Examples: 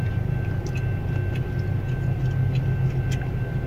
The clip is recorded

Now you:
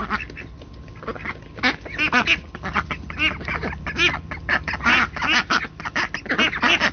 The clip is recorded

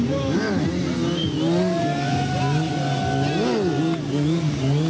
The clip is recorded